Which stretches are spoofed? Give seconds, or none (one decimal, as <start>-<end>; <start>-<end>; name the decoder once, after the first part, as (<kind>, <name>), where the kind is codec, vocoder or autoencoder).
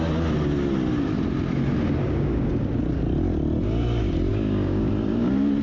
2.0-2.5 (codec, DAC); 4.3-4.9